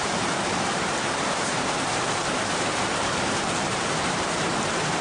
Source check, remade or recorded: remade